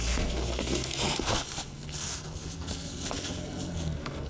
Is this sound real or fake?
fake